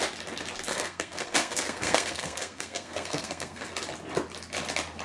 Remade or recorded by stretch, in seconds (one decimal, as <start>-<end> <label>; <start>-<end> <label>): 0.0-0.7 recorded; 0.7-3.7 remade; 3.7-5.0 recorded